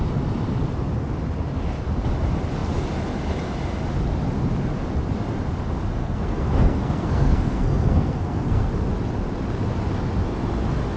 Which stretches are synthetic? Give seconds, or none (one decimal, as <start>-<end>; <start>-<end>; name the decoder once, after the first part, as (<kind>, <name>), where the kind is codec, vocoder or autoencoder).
6.0-8.7 (codec, SNAC)